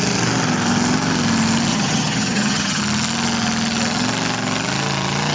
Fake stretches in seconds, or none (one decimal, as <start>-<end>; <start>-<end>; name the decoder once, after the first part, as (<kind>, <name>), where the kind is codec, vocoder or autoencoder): 1.7-2.8 (vocoder, HiFi-GAN)